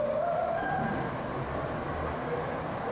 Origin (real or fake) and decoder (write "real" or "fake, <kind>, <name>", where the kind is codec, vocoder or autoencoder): real